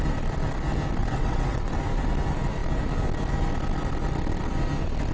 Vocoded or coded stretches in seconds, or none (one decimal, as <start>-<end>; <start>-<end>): 1.0-1.8